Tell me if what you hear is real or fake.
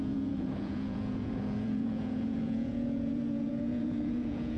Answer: fake